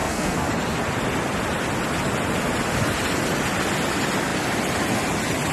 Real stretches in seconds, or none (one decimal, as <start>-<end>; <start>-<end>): 0.5-5.5